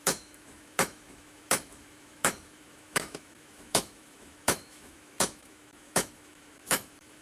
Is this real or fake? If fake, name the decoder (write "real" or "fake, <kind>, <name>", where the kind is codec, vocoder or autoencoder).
fake, autoencoder, DAC-VAE